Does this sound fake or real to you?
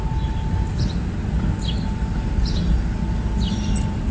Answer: real